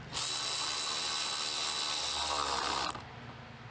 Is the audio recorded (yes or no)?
yes